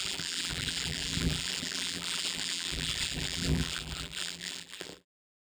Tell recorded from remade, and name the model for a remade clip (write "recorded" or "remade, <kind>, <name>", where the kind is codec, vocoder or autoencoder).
remade, vocoder, BigVGAN v2